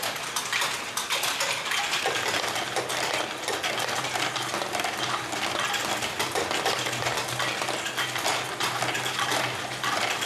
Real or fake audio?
real